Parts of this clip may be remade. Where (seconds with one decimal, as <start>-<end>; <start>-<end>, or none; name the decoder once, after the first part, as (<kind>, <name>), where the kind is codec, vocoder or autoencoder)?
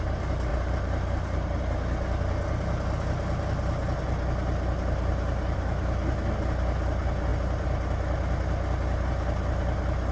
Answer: 0.5-1.6 (vocoder, BigVGAN v2)